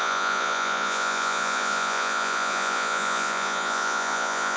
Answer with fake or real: fake